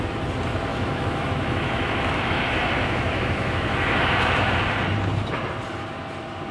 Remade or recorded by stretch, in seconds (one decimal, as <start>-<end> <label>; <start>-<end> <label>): 0.0-0.7 recorded; 0.7-4.6 remade; 4.6-6.5 recorded